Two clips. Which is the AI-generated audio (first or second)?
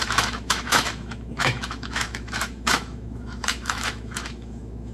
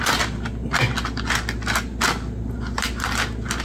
first